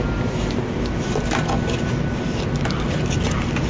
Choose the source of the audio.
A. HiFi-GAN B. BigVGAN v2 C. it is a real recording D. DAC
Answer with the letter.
C